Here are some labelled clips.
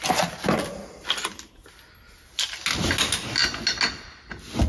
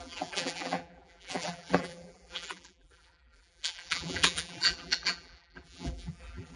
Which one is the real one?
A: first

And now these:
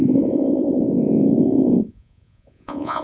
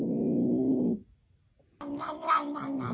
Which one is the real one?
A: second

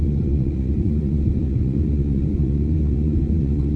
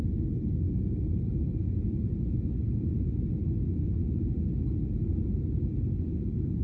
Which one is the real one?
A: second